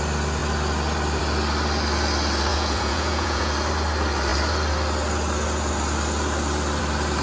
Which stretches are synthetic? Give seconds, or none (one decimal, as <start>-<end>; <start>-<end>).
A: 2.5-3.5